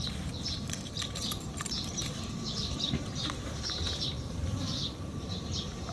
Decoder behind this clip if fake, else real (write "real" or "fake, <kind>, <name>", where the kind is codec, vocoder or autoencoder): fake, vocoder, BigVGAN v2